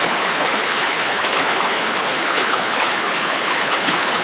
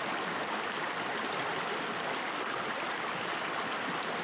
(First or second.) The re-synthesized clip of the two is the first